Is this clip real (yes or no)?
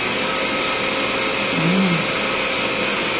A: yes